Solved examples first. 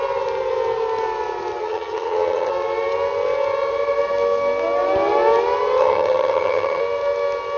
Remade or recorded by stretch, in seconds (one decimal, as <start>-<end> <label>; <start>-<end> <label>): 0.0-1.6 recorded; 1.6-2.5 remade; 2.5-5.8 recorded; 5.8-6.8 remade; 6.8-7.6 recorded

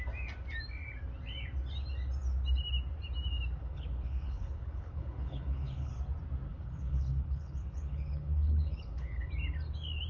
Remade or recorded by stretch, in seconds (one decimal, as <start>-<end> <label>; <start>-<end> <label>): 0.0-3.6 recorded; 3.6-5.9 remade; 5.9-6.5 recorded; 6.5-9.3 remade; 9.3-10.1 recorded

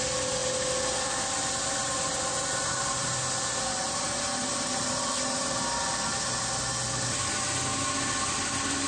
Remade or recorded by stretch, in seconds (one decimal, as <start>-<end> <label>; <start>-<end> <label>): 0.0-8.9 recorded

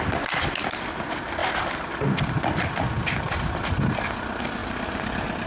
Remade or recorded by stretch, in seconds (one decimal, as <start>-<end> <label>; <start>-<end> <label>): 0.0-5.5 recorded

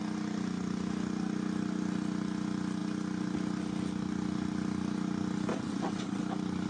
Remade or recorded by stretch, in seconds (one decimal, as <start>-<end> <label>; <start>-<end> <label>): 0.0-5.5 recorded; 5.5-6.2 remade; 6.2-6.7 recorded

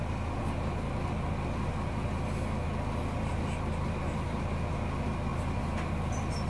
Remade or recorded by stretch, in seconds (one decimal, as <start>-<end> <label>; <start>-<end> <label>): 0.0-6.5 recorded